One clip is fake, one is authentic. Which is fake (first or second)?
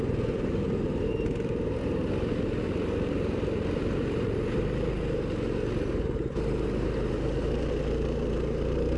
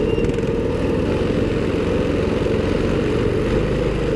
first